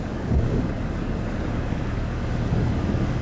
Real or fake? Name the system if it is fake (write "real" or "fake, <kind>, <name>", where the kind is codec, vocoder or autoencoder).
fake, codec, DAC